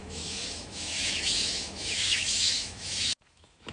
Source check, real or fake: fake